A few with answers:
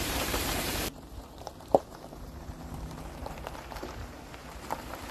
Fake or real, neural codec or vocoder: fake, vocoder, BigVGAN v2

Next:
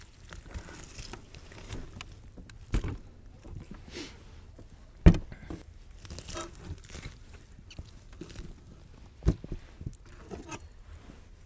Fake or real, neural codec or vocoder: real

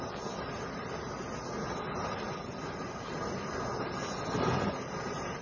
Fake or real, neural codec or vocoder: real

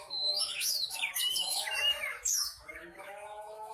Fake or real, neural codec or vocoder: fake, autoencoder, DAC-VAE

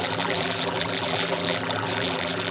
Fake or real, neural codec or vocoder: fake, vocoder, BigVGAN v2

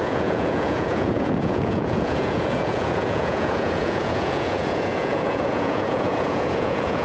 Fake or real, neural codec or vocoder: fake, vocoder, Vocos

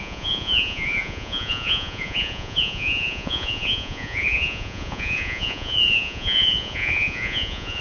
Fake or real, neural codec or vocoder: fake, vocoder, Vocos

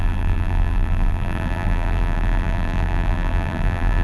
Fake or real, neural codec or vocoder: fake, vocoder, BigVGAN v2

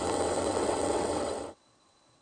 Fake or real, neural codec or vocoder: fake, vocoder, WaveNeXt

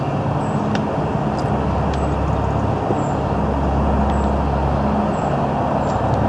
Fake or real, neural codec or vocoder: real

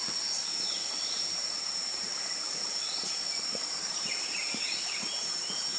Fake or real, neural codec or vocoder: fake, vocoder, BigVGAN v2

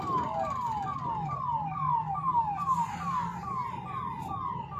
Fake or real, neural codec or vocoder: real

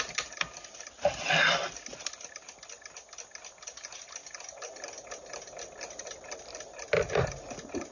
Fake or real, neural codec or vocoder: real